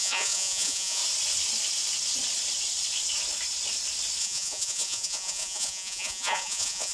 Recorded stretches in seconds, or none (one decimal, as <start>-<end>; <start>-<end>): 1.0-4.2